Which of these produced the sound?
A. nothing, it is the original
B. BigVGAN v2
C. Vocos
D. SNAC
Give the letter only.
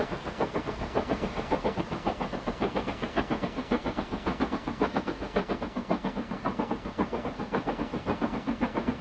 D